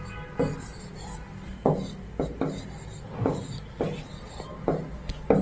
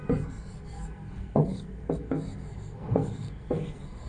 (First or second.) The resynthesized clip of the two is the second